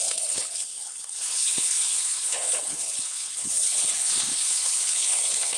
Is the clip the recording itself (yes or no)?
no